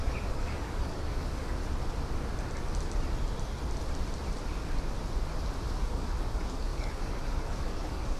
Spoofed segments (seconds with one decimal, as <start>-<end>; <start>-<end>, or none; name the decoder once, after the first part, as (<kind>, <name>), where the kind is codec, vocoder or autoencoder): 0.0-1.6 (codec, DAC); 5.8-8.2

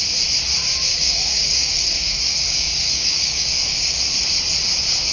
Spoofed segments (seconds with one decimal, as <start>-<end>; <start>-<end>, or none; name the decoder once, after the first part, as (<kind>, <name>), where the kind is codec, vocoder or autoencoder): 0.9-4.0 (codec, DAC)

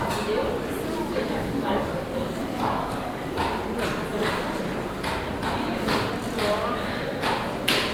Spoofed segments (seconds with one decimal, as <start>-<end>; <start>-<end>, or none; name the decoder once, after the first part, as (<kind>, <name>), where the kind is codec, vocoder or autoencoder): 1.0-1.9 (codec, DAC); 2.4-3.4

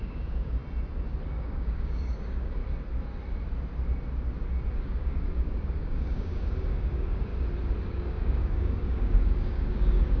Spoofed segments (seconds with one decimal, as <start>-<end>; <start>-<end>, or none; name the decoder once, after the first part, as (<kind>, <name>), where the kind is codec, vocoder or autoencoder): 0.0-0.6 (codec, DAC); 1.4-2.6; 4.7-7.3; 7.9-10.2

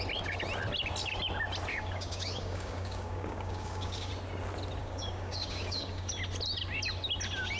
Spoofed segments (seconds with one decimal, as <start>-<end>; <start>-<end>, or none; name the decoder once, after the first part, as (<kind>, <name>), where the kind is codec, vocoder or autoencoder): 1.7-4.1 (codec, DAC); 4.8-6.1

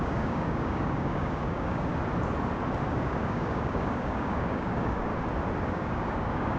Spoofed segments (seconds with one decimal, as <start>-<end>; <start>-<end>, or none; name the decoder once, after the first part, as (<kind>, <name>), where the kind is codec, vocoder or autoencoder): 0.0-1.9 (codec, DAC); 2.9-5.1; 5.7-6.6